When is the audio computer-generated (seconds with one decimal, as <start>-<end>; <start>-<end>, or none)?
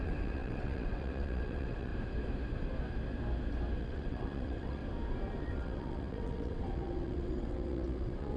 0.0-1.9; 3.8-4.8; 5.4-8.4